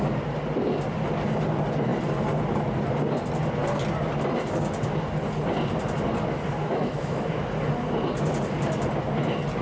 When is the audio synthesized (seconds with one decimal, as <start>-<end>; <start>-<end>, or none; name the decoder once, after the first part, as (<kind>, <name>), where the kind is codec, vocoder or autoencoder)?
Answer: 6.6-7.3 (autoencoder, DAC-VAE)